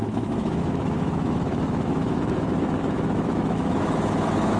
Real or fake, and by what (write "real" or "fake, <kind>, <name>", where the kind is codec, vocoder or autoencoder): fake, autoencoder, DAC-VAE